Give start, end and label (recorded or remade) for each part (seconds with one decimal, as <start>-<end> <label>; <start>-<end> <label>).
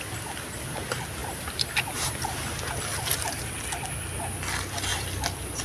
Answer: 0.0-1.2 recorded; 1.2-2.1 remade; 2.1-2.9 recorded; 2.9-3.5 remade; 3.5-4.9 recorded; 4.9-5.6 remade